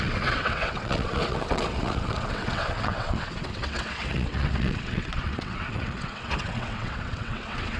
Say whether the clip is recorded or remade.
remade